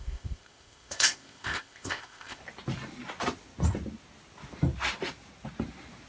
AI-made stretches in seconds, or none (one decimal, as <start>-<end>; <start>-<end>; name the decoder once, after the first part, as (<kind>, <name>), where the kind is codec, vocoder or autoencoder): 0.0-2.4 (codec, ZipCodec)